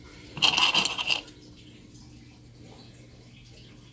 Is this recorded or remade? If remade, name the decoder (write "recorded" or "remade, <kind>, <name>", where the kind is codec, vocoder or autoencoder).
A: recorded